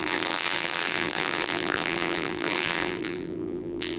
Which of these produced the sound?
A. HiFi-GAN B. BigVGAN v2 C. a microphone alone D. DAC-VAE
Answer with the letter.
B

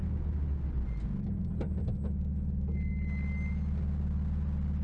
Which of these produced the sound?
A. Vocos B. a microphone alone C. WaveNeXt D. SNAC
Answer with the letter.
B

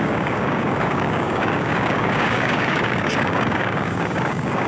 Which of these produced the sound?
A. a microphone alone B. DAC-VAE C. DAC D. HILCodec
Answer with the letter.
C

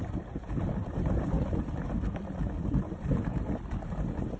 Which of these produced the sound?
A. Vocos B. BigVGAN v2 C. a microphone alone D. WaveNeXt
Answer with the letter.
B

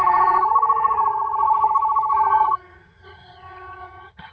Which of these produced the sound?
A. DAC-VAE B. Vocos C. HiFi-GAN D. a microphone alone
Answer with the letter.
C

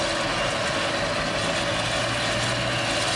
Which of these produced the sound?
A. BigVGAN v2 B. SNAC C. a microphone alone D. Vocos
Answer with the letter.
C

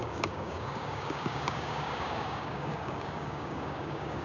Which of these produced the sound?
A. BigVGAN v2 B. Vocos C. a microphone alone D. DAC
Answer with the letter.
D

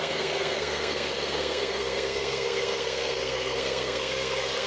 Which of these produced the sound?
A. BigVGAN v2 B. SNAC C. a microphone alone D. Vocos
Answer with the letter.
B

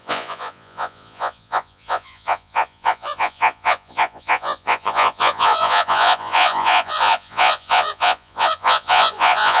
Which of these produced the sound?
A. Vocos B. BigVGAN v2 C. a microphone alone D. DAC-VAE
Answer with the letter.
A